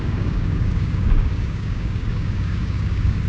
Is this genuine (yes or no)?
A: no